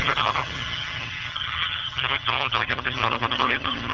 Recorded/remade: remade